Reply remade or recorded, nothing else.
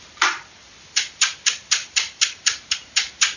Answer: recorded